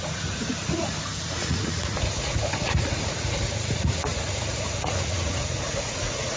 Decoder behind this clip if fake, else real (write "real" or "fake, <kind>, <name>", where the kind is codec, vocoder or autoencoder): fake, vocoder, Vocos